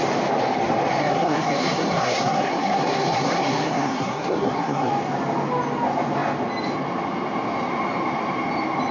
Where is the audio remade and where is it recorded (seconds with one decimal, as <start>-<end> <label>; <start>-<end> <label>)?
0.0-1.0 recorded; 1.0-4.9 remade; 4.9-8.9 recorded